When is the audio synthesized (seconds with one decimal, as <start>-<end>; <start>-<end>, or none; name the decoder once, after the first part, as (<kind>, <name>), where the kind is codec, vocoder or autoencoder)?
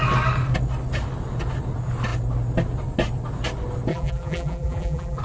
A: 3.9-5.2 (vocoder, BigVGAN v2)